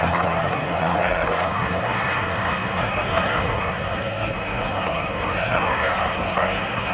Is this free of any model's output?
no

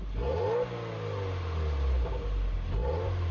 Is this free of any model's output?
yes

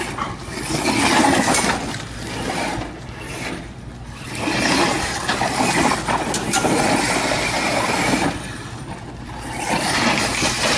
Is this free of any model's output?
yes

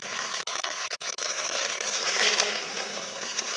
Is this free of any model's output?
no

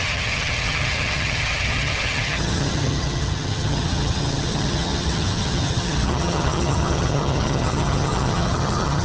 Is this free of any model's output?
no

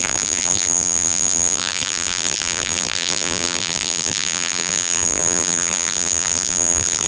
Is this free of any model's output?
no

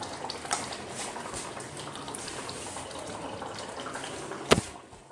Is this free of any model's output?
no